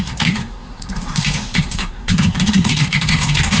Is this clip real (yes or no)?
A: no